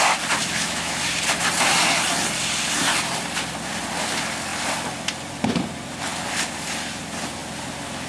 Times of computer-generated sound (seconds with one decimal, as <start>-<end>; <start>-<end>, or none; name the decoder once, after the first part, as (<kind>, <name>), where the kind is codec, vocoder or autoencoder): 0.4-1.0 (autoencoder, DAC-VAE)